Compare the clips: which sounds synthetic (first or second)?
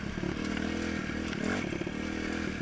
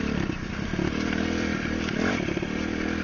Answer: second